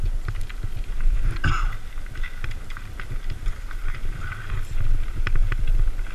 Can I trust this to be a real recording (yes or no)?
yes